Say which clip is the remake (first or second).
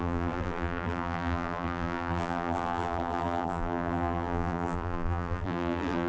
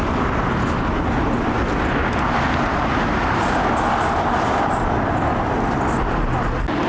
first